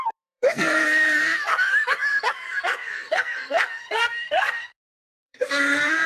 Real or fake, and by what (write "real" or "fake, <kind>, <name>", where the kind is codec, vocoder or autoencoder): fake, codec, SNAC